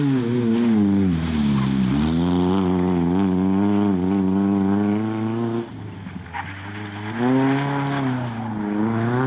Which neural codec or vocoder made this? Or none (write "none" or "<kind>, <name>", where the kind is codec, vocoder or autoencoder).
none